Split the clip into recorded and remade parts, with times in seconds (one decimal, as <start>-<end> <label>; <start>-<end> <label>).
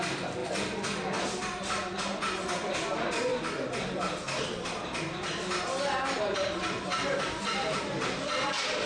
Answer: 0.0-8.9 recorded